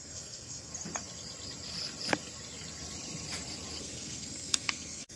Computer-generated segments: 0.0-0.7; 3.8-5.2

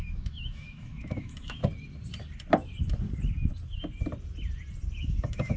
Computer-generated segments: 0.0-1.6; 5.0-5.6